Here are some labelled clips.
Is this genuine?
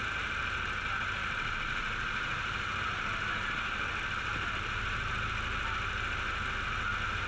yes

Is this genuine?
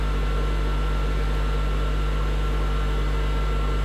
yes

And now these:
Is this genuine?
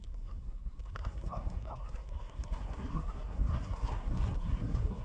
no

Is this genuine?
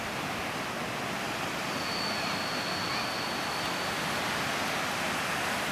yes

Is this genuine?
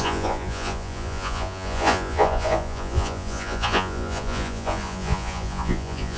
no